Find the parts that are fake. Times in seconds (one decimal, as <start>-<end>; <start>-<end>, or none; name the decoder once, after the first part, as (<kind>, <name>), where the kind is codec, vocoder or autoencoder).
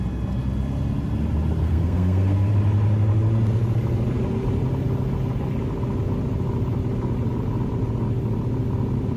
1.6-2.5 (codec, SNAC)